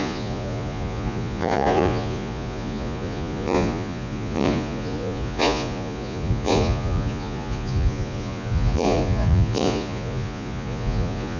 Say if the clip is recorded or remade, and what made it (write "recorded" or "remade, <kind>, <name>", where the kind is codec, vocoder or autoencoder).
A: remade, vocoder, Vocos